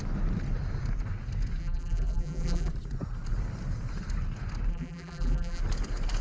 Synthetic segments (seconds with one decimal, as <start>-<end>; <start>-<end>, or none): 1.6-2.7; 4.7-5.6